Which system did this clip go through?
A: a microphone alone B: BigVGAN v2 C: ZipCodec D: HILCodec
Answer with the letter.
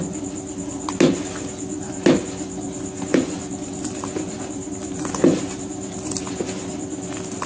A